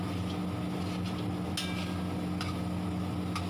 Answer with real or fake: real